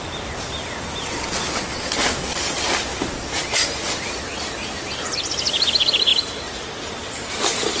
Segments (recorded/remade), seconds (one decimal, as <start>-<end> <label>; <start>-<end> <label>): 0.0-7.8 recorded